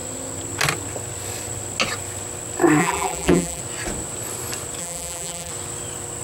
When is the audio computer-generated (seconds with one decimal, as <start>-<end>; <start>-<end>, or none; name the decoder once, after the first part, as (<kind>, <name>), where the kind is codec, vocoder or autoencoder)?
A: 2.8-3.6 (vocoder, BigVGAN v2); 4.8-5.5